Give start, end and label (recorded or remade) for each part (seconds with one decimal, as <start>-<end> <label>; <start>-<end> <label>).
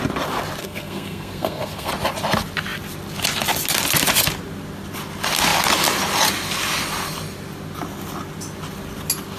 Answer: 0.0-0.6 recorded; 0.6-1.9 remade; 1.9-9.4 recorded